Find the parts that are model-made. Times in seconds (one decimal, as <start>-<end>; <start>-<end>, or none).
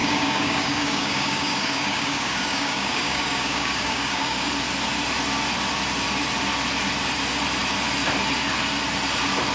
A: 0.0-4.5